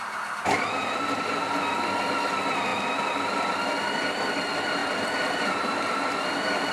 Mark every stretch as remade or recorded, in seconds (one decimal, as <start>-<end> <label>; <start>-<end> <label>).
0.0-6.7 recorded